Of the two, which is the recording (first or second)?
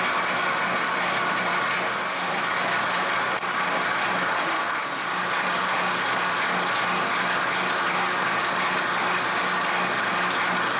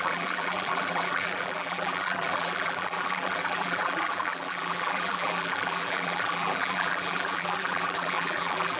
first